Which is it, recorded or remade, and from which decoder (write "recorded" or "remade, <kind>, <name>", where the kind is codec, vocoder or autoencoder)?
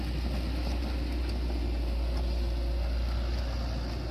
recorded